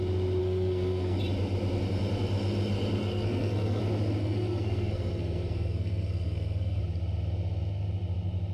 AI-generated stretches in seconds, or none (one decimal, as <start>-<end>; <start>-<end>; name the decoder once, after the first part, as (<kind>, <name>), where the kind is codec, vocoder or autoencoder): 0.4-1.2 (codec, SNAC); 3.0-3.8; 4.2-6.8